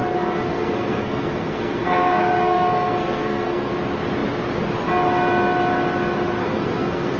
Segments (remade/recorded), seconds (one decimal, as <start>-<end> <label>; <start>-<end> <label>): 0.0-3.7 remade; 3.7-6.4 recorded; 6.4-7.2 remade